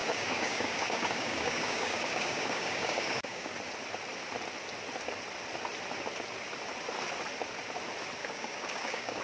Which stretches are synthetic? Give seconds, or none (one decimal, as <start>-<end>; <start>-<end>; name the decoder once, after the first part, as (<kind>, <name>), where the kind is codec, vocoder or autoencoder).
0.0-3.5 (codec, DAC); 8.2-9.2